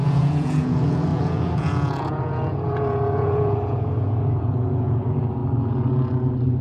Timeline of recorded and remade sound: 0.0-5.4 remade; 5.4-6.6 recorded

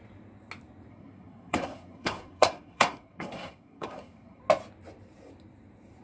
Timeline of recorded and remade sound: 0.0-0.9 recorded; 0.9-4.4 remade; 4.4-6.0 recorded

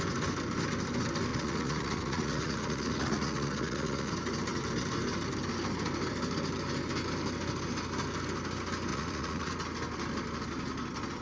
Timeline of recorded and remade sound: 0.0-1.3 recorded; 1.3-4.1 remade; 4.1-8.9 recorded; 8.9-9.5 remade; 9.5-11.2 recorded